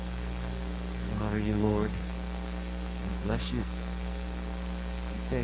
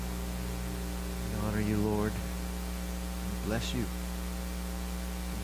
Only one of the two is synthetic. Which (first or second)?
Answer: first